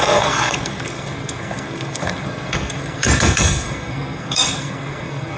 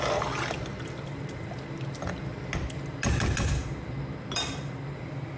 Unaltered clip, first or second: second